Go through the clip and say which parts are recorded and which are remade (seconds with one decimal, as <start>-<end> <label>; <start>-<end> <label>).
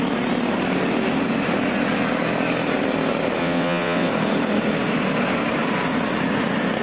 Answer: 0.0-3.4 recorded; 3.4-4.1 remade; 4.1-6.8 recorded